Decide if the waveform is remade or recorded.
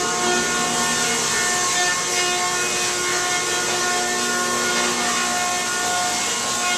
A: recorded